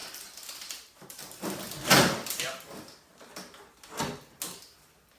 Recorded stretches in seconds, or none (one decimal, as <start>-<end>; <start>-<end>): 1.4-5.2

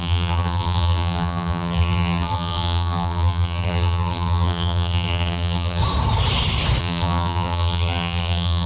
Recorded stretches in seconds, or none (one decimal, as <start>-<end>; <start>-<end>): 5.8-6.8

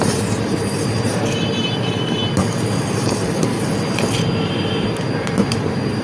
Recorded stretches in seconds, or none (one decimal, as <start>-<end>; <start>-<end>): 2.2-4.8

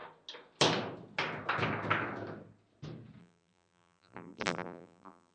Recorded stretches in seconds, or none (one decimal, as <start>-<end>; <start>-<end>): 0.0-3.2

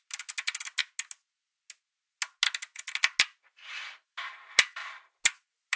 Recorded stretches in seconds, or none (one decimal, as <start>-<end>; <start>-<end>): 0.0-5.8

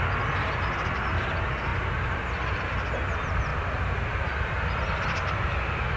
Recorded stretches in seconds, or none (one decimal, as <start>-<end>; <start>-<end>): 0.0-6.0

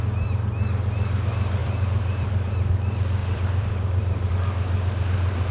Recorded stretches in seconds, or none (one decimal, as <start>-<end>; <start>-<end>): 0.0-1.6; 2.5-3.2; 4.3-5.5

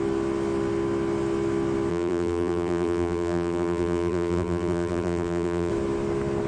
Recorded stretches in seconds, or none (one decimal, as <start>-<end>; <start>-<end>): 0.0-1.9; 5.7-6.5